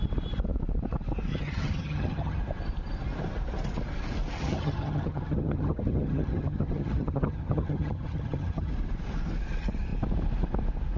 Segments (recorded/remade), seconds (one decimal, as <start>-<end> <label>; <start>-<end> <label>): 0.0-1.3 recorded; 1.3-2.4 remade; 2.4-4.4 recorded; 4.4-8.7 remade; 8.7-11.0 recorded